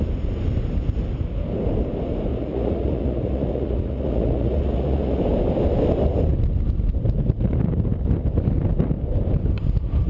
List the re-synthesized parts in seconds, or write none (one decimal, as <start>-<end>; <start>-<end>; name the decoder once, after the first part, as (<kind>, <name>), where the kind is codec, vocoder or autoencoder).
2.3-5.2 (vocoder, Vocos)